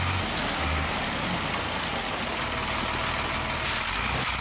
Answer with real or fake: real